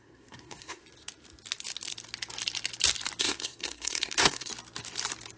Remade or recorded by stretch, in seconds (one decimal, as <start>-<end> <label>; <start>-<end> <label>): 0.0-0.8 remade; 0.8-3.2 recorded; 3.2-4.5 remade; 4.5-5.4 recorded